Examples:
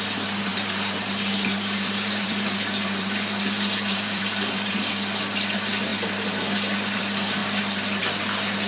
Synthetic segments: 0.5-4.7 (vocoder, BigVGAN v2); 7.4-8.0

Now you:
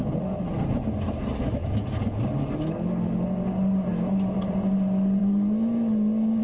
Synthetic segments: 3.9-4.5 (autoencoder, DAC-VAE); 5.2-6.4